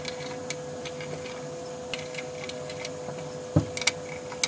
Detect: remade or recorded recorded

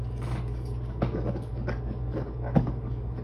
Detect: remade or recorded remade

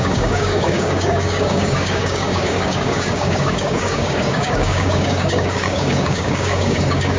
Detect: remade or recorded remade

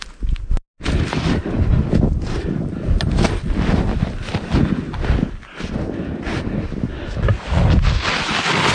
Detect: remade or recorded recorded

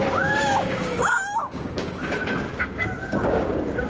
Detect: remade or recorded remade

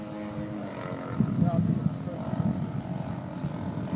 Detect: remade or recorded recorded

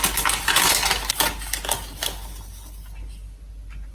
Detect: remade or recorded recorded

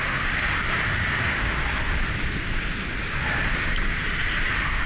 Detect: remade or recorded recorded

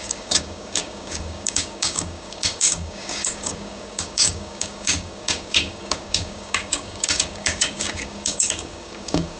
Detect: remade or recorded remade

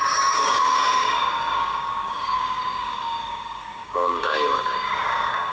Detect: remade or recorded remade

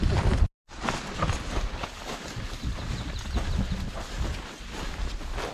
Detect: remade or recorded recorded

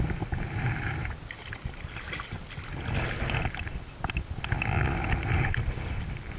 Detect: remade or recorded recorded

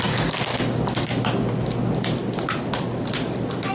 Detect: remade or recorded recorded